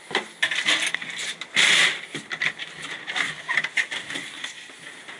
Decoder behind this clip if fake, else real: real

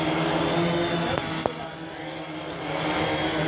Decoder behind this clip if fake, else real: fake, vocoder, BigVGAN v2